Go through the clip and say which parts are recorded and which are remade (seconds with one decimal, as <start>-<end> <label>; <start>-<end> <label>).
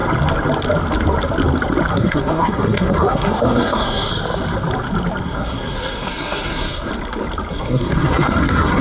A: 0.0-1.9 recorded; 1.9-4.1 remade; 4.1-5.2 recorded; 5.2-6.9 remade; 6.9-7.5 recorded; 7.5-8.8 remade